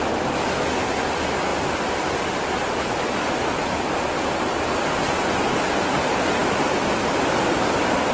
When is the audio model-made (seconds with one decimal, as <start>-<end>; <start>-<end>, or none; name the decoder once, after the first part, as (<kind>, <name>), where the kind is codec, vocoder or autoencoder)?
none